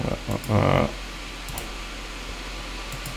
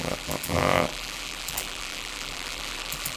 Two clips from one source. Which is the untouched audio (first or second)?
first